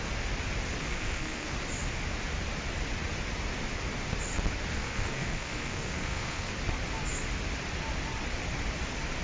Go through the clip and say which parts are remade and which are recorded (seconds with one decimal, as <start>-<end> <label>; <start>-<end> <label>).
0.0-0.8 recorded; 0.8-1.5 remade; 1.5-4.7 recorded; 4.7-6.5 remade; 6.5-9.2 recorded